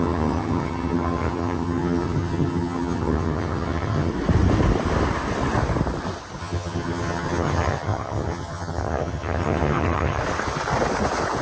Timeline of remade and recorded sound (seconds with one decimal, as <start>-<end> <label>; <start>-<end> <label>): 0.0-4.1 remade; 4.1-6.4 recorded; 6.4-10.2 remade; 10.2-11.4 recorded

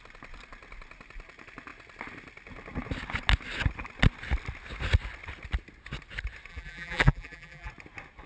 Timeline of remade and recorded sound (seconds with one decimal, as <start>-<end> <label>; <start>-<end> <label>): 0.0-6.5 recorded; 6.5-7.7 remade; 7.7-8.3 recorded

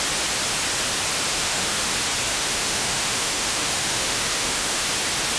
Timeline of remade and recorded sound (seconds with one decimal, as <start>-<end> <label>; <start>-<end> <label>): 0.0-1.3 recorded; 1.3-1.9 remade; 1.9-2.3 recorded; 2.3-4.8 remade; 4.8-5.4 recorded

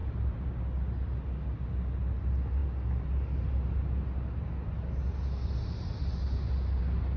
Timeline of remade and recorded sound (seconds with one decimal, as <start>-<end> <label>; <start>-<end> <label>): 0.0-7.2 recorded

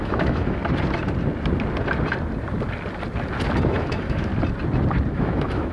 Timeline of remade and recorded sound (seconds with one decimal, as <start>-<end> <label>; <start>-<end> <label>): 0.0-0.6 remade; 0.6-3.6 recorded; 3.6-4.3 remade; 4.3-5.1 recorded; 5.1-5.7 remade

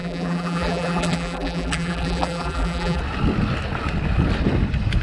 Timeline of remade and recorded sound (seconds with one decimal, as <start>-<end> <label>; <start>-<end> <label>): 0.0-3.0 remade; 3.0-5.0 recorded